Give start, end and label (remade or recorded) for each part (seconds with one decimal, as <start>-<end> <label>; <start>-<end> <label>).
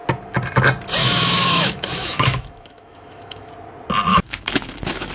0.0-1.0 recorded; 1.0-3.5 remade; 3.5-4.1 recorded; 4.1-5.1 remade